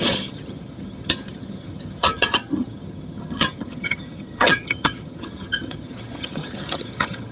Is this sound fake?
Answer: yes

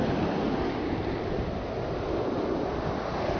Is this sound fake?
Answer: no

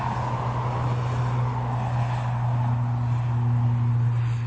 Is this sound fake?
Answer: no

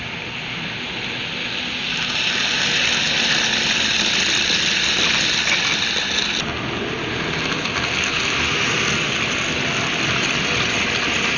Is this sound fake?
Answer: no